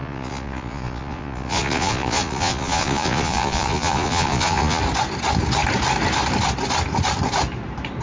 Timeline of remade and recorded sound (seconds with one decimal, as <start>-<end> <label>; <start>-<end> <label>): 0.0-4.8 remade; 4.8-8.0 recorded